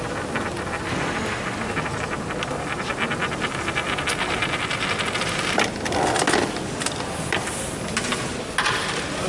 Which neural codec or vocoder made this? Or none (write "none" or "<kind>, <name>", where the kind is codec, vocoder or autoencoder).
none